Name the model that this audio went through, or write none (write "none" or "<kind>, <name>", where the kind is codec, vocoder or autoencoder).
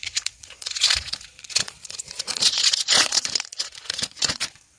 vocoder, Vocos